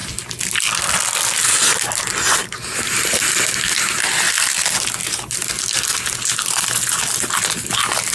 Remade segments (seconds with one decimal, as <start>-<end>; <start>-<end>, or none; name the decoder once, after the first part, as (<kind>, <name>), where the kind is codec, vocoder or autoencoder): 2.4-3.2 (vocoder, BigVGAN v2); 5.0-5.5

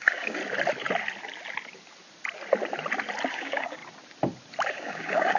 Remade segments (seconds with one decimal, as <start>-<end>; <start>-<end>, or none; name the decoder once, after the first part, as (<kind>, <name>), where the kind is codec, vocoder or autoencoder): 0.0-0.4 (codec, DAC); 3.3-3.8; 4.7-5.4

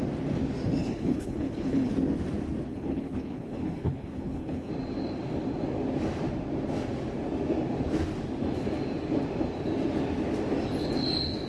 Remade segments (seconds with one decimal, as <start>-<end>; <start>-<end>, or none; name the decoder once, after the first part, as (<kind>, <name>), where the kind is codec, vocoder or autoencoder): 0.8-1.9 (codec, HILCodec); 2.7-4.7

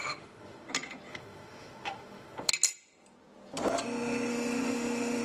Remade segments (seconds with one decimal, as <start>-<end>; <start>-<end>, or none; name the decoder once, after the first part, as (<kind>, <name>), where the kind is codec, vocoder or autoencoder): 0.0-0.7 (autoencoder, DAC-VAE); 1.1-2.5; 4.3-5.2

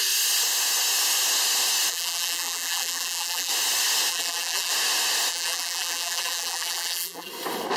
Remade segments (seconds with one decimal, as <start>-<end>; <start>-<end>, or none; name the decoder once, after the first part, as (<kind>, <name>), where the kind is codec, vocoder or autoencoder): 1.9-3.5 (vocoder, BigVGAN v2); 4.1-4.7; 5.3-7.3

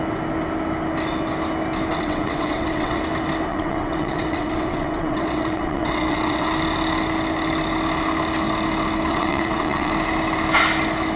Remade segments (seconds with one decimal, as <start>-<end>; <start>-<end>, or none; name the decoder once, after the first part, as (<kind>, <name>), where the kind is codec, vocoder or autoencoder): 1.9-3.0 (vocoder, WaveNeXt); 3.5-6.5; 9.1-9.9